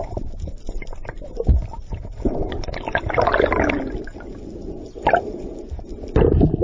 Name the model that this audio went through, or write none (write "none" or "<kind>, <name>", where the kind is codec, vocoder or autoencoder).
vocoder, BigVGAN v2